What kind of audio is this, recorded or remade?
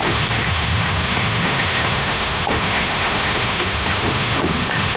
remade